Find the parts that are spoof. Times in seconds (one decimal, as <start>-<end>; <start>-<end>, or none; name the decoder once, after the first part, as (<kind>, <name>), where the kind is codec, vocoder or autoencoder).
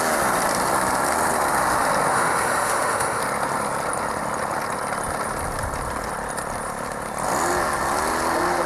2.1-3.2 (autoencoder, DAC-VAE)